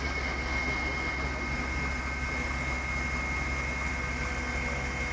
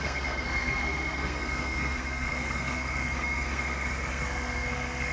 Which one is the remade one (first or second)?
second